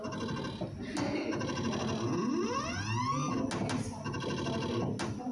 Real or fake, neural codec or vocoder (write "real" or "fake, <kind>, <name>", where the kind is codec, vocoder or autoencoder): real